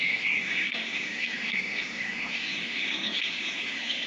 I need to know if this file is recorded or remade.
remade